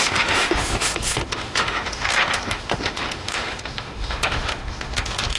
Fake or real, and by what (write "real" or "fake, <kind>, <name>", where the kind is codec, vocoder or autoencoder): fake, autoencoder, DAC-VAE